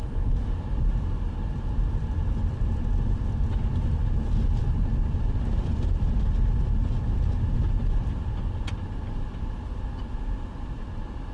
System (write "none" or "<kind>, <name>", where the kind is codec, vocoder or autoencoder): none